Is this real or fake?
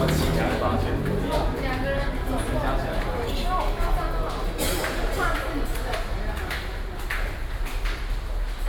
real